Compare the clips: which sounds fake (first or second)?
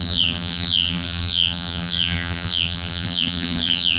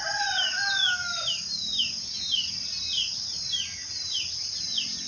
first